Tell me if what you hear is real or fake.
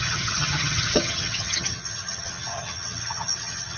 fake